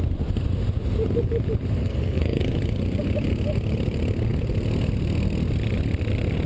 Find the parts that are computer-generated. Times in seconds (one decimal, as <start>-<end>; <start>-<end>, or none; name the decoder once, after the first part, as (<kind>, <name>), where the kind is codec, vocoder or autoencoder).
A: 1.8-2.4 (codec, SNAC)